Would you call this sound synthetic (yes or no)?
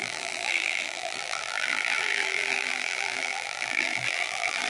yes